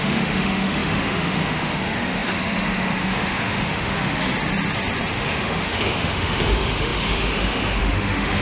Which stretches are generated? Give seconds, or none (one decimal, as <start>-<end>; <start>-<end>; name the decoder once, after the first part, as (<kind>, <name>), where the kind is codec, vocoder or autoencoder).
0.0-4.3 (autoencoder, DAC-VAE); 5.1-8.4